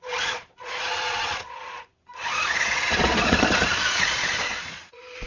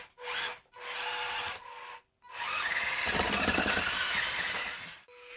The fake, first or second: first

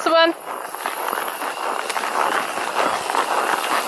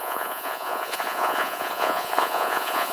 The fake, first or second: second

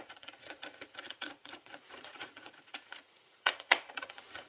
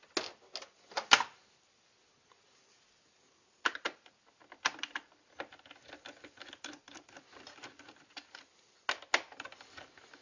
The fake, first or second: first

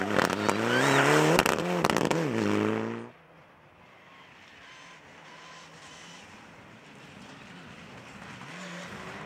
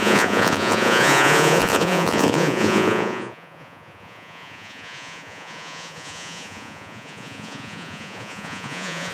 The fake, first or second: second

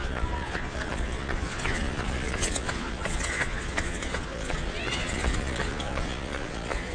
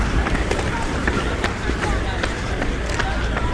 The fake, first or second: first